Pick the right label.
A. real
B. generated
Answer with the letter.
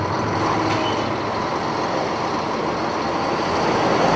A